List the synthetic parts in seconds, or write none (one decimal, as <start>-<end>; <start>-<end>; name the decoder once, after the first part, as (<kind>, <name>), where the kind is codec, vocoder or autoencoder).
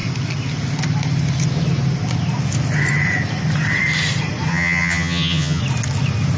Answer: 4.5-5.6 (vocoder, HiFi-GAN)